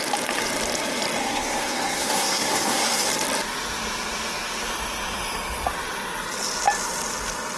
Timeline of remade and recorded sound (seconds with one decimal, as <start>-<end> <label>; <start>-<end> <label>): 0.0-1.2 recorded; 1.2-3.1 remade; 3.1-7.6 recorded